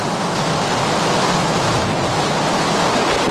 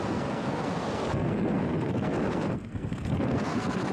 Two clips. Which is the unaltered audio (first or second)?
first